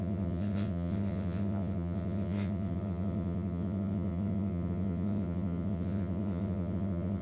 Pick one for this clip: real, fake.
fake